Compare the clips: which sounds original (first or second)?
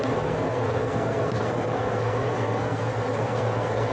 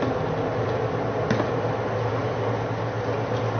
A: second